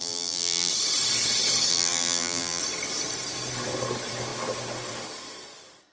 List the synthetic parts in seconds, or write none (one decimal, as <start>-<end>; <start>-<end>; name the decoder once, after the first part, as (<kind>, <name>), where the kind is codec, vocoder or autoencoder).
0.0-0.7 (vocoder, BigVGAN v2); 1.7-2.6